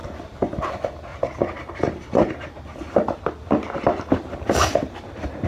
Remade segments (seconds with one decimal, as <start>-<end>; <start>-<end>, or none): 0.0-0.7; 1.1-2.6